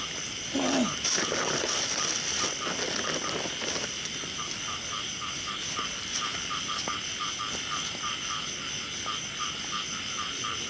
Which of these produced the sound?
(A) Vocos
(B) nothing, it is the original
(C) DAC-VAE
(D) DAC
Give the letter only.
B